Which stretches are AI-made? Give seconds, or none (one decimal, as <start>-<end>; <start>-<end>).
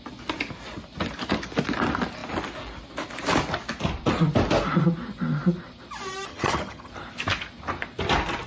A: 6.3-6.9